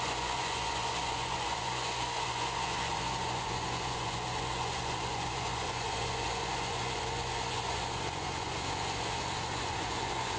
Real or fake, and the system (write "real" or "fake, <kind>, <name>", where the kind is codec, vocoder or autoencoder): fake, vocoder, Vocos